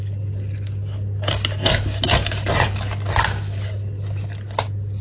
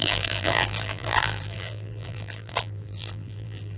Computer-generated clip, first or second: second